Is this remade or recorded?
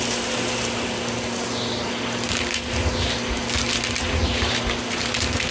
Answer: recorded